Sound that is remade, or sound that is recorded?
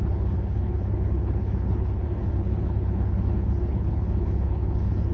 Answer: remade